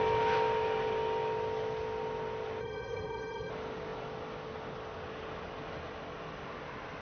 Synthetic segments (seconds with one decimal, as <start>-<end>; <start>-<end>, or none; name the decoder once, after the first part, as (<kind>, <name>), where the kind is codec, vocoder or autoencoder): 2.6-3.5 (codec, SNAC)